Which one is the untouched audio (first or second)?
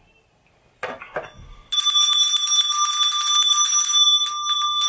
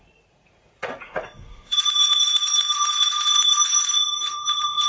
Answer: first